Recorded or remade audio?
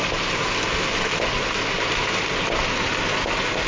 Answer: recorded